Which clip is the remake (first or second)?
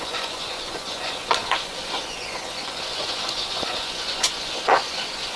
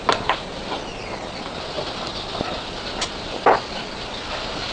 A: first